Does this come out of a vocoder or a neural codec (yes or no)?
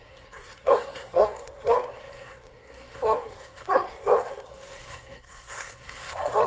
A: yes